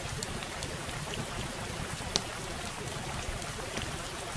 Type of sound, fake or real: real